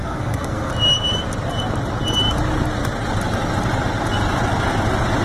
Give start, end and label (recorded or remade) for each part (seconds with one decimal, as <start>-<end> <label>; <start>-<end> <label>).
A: 0.0-0.7 remade; 0.7-5.2 recorded